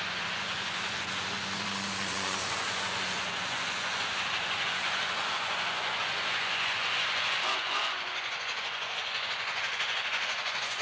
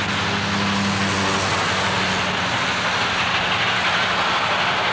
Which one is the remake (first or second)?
first